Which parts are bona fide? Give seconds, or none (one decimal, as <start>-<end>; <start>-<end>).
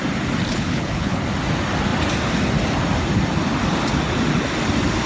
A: 0.0-0.5; 1.2-5.1